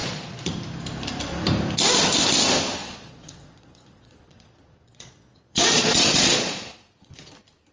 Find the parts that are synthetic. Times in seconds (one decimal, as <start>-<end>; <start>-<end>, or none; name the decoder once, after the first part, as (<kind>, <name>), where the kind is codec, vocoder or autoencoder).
0.0-0.5 (vocoder, Vocos); 2.8-7.3